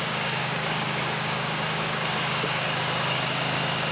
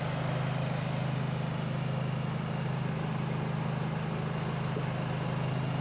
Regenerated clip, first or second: first